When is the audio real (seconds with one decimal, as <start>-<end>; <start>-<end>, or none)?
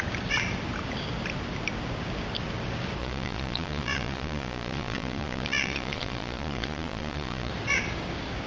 0.0-3.0; 7.5-8.5